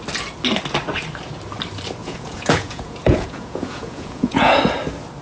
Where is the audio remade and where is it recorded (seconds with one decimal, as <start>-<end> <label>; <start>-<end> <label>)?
0.0-2.0 recorded; 2.0-4.6 remade; 4.6-5.2 recorded